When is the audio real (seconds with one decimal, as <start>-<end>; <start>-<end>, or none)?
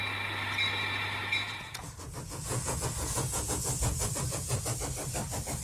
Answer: 0.0-1.2; 4.6-5.6